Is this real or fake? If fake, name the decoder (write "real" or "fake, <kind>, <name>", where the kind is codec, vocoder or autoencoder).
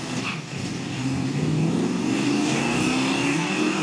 fake, codec, DAC